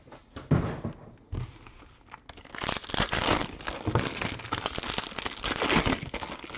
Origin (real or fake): real